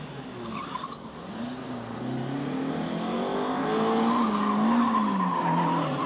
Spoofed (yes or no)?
no